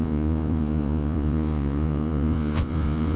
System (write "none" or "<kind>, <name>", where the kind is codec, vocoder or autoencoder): vocoder, Vocos